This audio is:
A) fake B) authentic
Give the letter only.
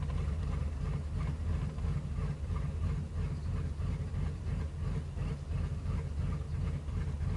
B